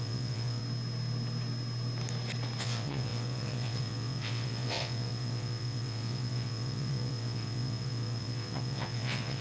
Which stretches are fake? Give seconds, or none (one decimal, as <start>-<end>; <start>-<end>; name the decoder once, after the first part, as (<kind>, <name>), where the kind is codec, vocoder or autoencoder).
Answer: 0.0-0.6 (vocoder, WaveNeXt); 2.6-9.4